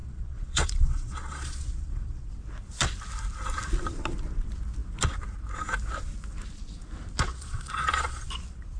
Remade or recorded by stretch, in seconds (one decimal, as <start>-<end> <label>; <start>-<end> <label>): 0.0-2.3 remade; 2.3-7.3 recorded; 7.3-8.3 remade; 8.3-8.8 recorded